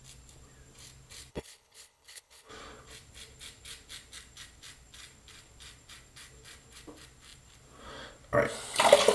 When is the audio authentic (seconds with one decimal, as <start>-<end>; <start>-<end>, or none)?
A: 0.0-1.3; 2.5-9.1